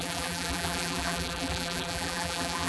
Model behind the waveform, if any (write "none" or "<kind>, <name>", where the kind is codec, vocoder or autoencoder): vocoder, BigVGAN v2